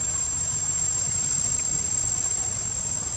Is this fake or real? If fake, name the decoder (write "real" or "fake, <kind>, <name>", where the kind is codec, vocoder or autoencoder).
real